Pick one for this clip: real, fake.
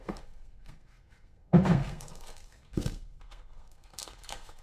fake